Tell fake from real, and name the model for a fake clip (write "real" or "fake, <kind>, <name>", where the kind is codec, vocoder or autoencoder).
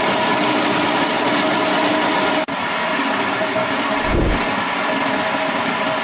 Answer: real